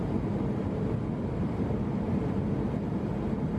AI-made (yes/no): no